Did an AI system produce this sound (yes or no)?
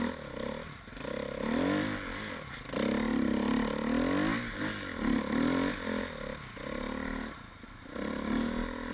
no